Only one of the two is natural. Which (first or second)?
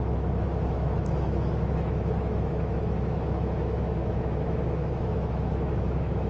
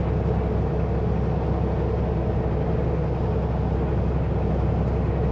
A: second